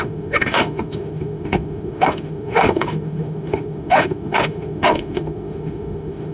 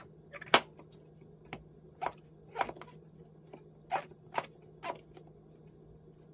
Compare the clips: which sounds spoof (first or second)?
first